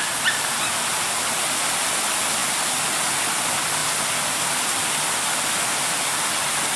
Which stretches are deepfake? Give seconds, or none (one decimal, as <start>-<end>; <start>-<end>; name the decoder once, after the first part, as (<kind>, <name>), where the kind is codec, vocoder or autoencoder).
none